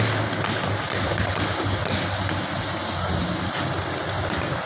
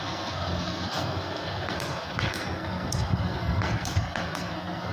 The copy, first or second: second